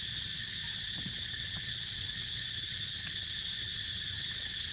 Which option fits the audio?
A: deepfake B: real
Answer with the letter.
B